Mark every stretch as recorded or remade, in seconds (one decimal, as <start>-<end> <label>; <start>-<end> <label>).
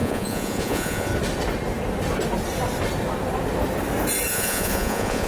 0.0-1.1 remade; 1.1-4.3 recorded; 4.3-5.3 remade